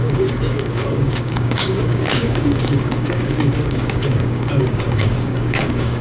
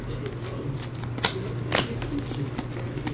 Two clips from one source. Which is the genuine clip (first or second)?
second